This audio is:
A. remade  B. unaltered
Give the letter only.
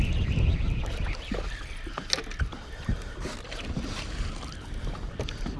B